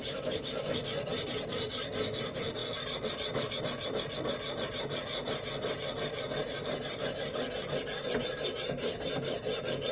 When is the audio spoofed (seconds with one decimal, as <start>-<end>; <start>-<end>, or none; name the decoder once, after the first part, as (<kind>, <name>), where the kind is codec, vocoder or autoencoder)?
none